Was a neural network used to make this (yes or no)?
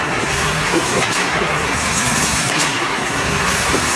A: yes